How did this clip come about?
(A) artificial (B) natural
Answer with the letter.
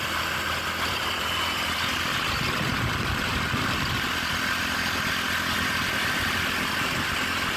B